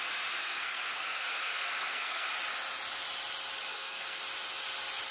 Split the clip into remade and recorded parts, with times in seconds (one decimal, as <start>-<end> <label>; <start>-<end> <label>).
0.0-0.4 recorded; 0.4-2.3 remade; 2.3-3.7 recorded; 3.7-4.2 remade; 4.2-5.1 recorded